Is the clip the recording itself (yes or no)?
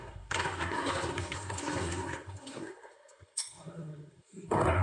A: no